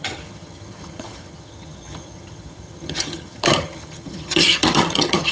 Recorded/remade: remade